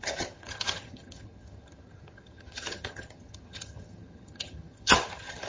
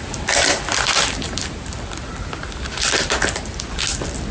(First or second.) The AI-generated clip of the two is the first